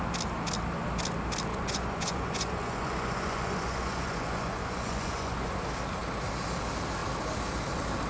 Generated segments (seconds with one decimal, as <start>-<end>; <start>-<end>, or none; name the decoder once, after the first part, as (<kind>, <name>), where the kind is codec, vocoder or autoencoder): 1.5-5.5 (vocoder, Vocos)